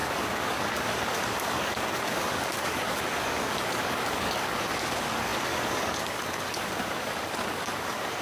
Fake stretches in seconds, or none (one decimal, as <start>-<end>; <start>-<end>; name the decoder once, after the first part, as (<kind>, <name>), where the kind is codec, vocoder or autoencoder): 0.0-8.2 (codec, DAC)